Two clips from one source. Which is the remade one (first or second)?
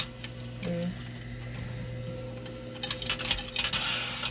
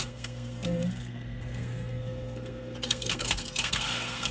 second